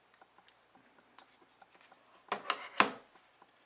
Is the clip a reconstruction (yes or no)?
no